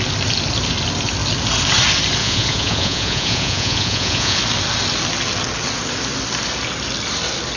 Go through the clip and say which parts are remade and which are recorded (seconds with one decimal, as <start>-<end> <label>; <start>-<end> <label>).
0.0-2.2 recorded; 2.2-4.4 remade; 4.4-7.6 recorded